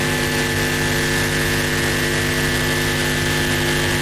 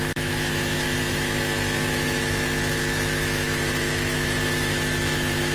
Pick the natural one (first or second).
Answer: first